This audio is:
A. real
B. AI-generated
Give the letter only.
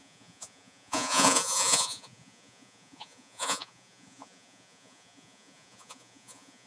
B